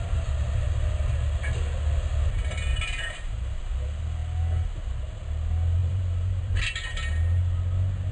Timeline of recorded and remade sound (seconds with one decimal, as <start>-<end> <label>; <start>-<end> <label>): 0.0-2.7 recorded; 2.7-3.6 remade; 3.6-5.8 recorded; 5.8-6.7 remade; 6.7-8.1 recorded